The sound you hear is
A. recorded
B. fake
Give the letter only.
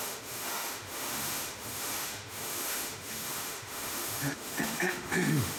B